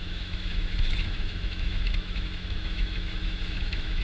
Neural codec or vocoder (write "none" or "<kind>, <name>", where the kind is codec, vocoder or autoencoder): autoencoder, DAC-VAE